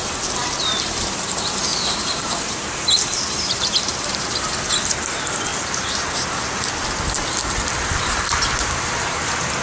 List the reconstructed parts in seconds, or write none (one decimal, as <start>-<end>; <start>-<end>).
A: 0.6-5.5; 7.6-9.6